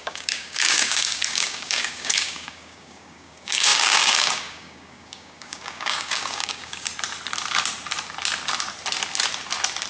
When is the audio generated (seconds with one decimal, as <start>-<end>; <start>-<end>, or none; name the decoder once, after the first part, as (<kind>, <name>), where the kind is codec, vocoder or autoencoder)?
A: 0.0-6.9 (codec, DAC)